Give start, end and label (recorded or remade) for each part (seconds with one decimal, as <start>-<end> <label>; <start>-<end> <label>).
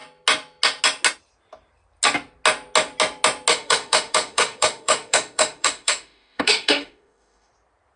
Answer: 0.0-3.5 recorded; 3.5-7.5 remade; 7.5-8.0 recorded